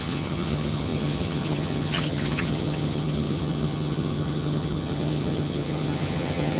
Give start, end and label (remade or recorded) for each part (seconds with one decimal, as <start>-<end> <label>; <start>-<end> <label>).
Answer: 0.0-6.6 remade